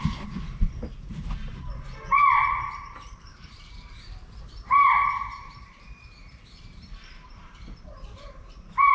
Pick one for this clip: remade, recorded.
remade